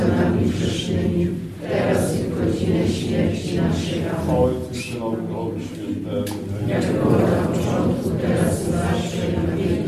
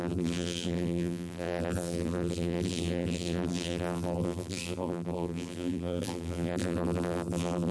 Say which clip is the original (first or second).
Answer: first